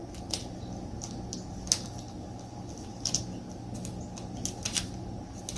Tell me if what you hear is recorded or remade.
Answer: recorded